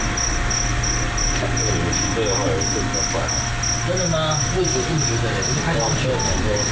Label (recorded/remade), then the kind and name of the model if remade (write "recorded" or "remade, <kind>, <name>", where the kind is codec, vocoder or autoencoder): recorded